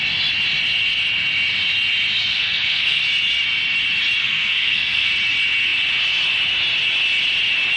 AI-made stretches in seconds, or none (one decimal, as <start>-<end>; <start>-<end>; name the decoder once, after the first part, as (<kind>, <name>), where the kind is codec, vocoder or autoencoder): 2.3-3.0 (codec, SNAC); 4.2-5.1